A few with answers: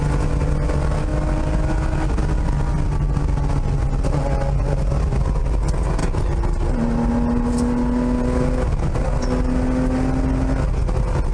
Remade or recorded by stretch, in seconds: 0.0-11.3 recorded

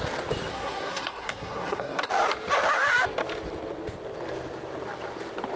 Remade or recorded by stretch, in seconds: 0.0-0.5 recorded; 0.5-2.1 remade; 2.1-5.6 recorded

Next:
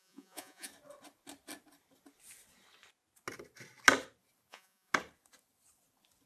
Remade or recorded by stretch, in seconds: 0.0-0.7 remade; 0.7-4.5 recorded; 4.5-4.9 remade; 4.9-6.3 recorded